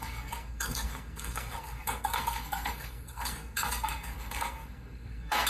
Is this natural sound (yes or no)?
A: no